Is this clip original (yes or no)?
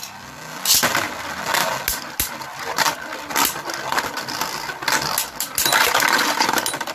yes